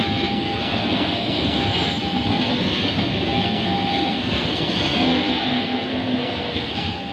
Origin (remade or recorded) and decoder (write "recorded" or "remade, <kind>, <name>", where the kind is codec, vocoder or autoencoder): remade, codec, SNAC